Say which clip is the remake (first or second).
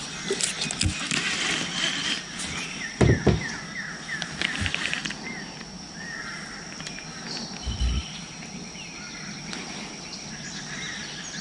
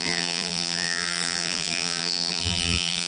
second